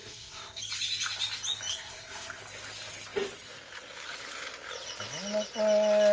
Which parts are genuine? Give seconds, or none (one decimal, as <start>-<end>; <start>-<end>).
0.6-1.7; 2.4-6.1